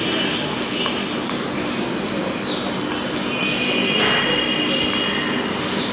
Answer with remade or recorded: recorded